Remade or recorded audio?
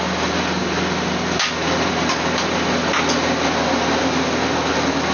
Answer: recorded